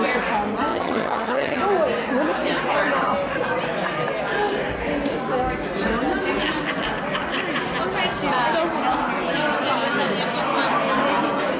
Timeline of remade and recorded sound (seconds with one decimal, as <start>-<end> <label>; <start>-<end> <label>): 0.0-0.7 recorded; 0.7-1.6 remade; 1.6-11.6 recorded